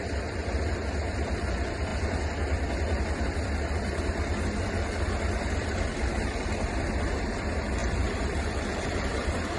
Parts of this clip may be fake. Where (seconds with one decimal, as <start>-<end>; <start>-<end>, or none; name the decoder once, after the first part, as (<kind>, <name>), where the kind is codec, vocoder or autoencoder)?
0.0-1.9 (vocoder, BigVGAN v2); 3.0-9.6